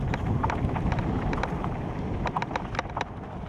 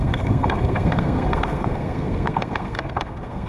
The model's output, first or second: second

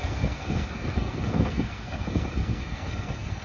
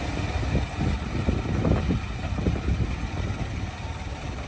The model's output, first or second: first